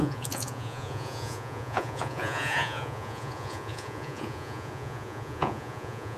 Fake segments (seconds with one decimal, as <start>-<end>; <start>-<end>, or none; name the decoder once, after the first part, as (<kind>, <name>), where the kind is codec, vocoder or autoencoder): 0.0-6.2 (vocoder, Vocos)